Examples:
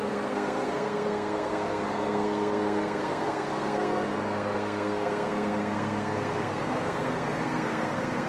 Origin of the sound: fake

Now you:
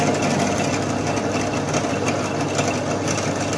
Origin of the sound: real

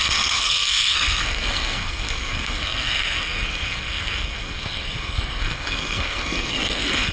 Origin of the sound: fake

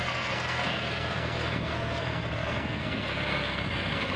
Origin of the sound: fake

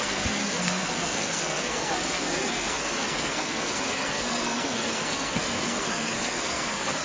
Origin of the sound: fake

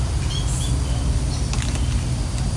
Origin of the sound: real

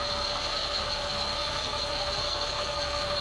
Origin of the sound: fake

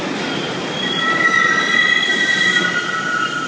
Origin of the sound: real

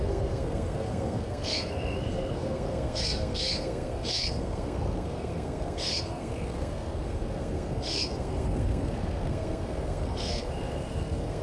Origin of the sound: fake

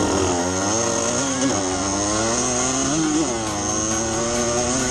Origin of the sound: real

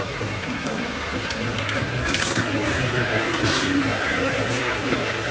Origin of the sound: fake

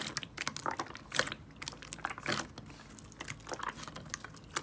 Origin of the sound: real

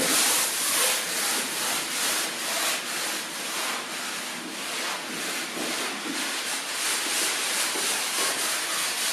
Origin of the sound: real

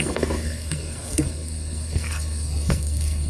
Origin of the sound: fake